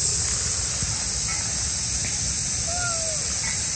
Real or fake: real